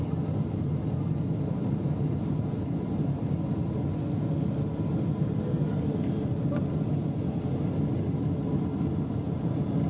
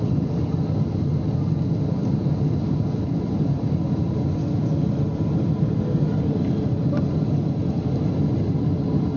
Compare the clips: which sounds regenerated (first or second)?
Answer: second